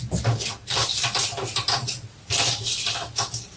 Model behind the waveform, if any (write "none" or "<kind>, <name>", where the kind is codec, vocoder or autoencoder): none